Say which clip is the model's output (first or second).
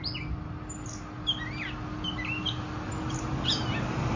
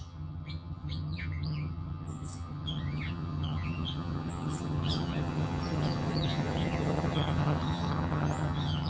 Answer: second